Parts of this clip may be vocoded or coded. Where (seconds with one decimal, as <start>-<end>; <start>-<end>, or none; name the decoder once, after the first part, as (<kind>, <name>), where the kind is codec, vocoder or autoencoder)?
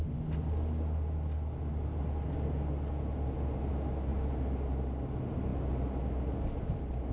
none